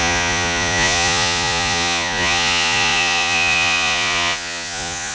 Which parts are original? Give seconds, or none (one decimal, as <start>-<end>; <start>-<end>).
none